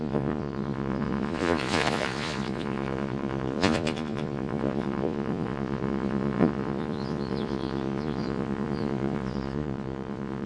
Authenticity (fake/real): fake